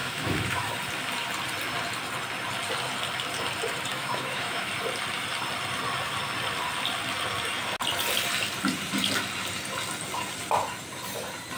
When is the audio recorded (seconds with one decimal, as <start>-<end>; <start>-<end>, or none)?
0.7-3.9; 4.7-11.6